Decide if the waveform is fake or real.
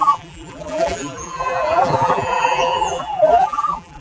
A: fake